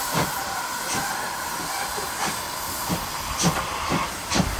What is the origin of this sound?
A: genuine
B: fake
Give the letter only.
B